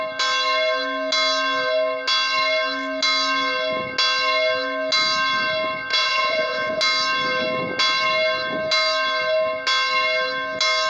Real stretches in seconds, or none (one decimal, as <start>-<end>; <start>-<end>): 0.0-5.9; 6.8-10.9